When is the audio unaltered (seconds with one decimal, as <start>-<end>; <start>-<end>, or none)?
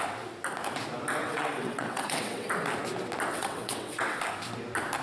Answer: 0.0-1.2; 2.5-3.3; 4.2-5.0